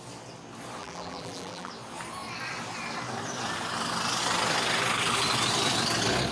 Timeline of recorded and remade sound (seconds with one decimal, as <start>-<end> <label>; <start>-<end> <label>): 0.0-0.8 recorded; 0.8-1.7 remade; 1.7-6.3 recorded